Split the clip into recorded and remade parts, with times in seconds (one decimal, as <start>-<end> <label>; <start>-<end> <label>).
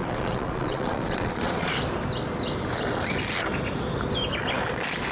0.0-1.7 remade; 1.7-5.1 recorded